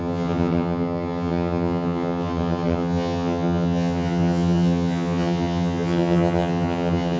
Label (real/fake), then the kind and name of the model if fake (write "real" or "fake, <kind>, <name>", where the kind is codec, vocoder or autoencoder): fake, vocoder, HiFi-GAN